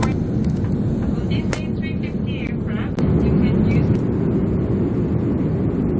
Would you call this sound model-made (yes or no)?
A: no